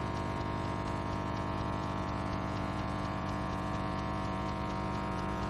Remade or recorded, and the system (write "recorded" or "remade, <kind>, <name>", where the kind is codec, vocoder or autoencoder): remade, vocoder, Vocos